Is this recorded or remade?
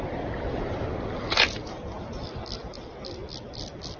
recorded